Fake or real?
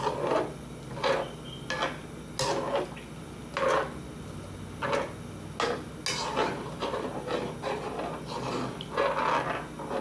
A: real